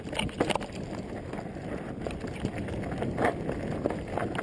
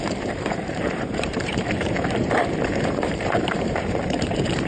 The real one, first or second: first